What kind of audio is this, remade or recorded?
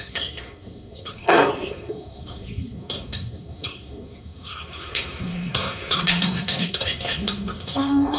remade